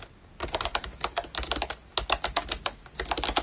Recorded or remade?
recorded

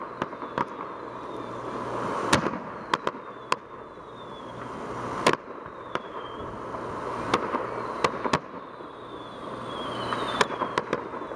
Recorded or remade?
recorded